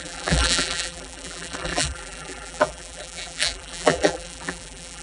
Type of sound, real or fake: fake